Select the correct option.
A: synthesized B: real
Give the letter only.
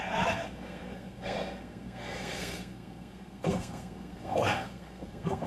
A